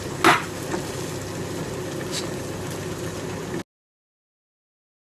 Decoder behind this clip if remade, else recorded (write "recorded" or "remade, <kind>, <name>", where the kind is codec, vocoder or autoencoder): recorded